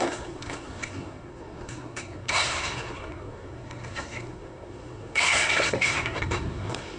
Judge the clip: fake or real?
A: fake